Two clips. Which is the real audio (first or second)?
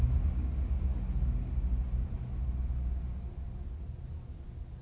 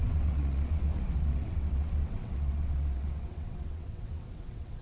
first